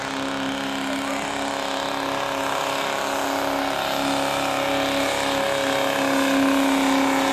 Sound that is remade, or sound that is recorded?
recorded